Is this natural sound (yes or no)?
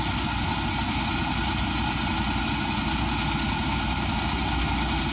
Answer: yes